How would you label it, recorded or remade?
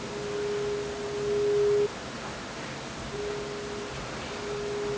recorded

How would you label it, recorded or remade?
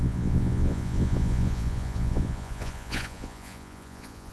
remade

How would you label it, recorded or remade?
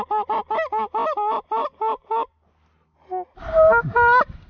recorded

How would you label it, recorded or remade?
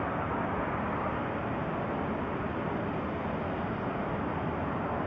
recorded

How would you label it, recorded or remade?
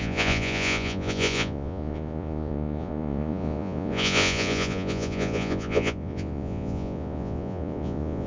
remade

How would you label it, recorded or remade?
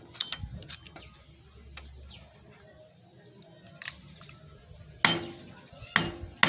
recorded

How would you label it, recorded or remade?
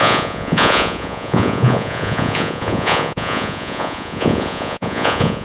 remade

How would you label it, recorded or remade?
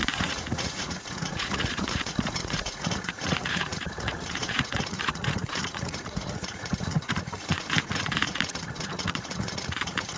remade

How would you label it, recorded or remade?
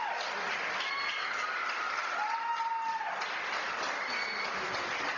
recorded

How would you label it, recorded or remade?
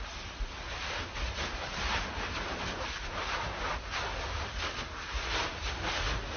recorded